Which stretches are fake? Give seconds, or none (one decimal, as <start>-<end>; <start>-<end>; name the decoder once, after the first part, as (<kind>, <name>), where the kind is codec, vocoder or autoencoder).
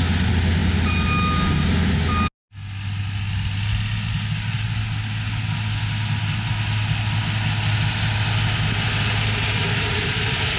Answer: 9.5-10.6 (vocoder, BigVGAN v2)